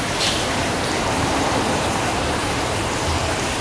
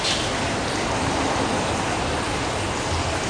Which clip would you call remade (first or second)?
first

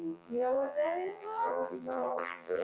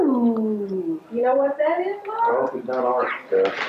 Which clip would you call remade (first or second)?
first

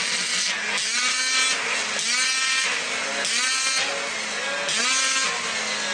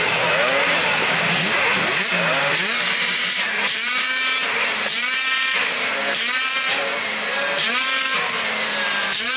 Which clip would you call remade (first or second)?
second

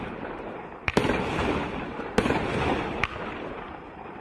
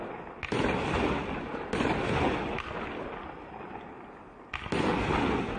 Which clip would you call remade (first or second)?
first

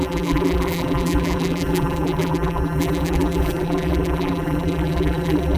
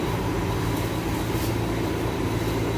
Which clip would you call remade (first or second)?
first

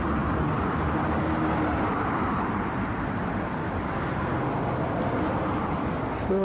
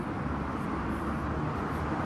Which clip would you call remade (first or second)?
first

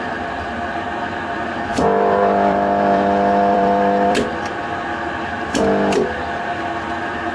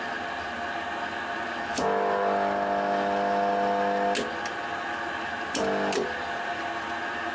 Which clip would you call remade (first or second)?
first